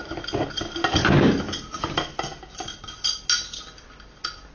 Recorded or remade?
recorded